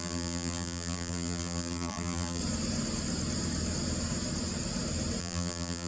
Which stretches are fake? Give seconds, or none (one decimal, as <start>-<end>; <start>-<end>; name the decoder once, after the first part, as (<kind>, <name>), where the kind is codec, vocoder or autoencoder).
0.0-2.4 (vocoder, BigVGAN v2); 5.2-5.9